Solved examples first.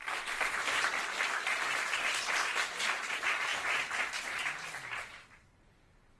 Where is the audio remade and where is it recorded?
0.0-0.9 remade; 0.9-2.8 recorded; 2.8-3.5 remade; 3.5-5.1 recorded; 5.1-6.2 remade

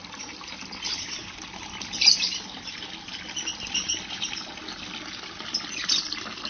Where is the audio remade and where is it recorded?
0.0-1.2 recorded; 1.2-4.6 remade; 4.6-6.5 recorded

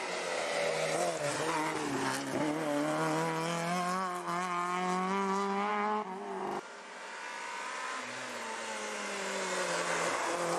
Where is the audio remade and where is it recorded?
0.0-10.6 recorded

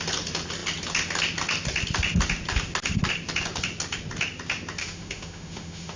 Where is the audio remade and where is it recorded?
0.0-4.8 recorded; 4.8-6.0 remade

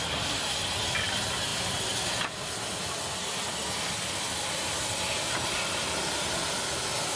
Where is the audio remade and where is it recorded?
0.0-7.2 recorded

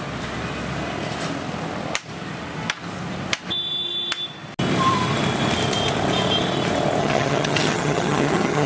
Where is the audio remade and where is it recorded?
0.0-7.0 recorded; 7.0-8.7 remade

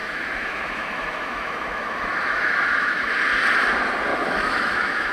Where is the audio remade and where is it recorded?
0.0-3.1 remade; 3.1-4.1 recorded; 4.1-5.1 remade